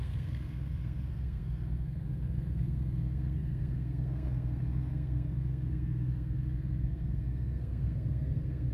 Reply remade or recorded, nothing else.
remade